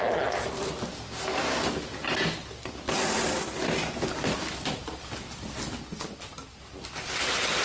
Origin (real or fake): real